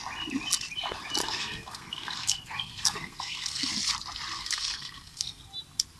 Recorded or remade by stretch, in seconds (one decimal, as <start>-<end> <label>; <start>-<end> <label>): 0.0-1.2 recorded; 1.2-3.7 remade; 3.7-4.4 recorded; 4.4-5.5 remade; 5.5-6.0 recorded